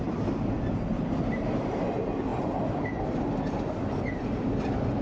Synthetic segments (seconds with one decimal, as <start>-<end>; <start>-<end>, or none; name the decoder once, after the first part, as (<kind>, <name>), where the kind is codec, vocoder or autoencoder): none